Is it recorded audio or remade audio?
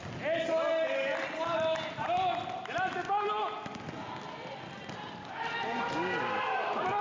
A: recorded